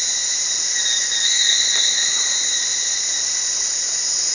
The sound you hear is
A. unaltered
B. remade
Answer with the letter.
A